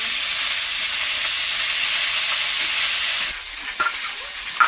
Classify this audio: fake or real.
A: real